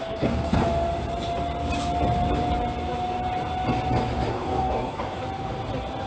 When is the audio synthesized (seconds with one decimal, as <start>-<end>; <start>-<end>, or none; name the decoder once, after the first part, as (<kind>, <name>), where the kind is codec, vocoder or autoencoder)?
0.0-0.6 (codec, DAC); 4.3-5.2